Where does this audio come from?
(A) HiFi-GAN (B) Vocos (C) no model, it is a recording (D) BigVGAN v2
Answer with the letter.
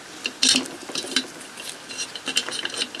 C